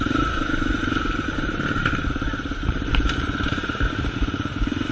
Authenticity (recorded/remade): remade